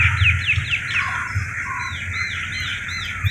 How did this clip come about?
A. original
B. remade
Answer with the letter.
A